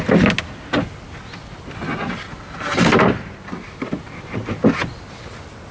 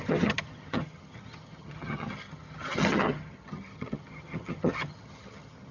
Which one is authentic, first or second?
first